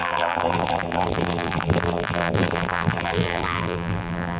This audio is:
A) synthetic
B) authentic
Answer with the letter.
A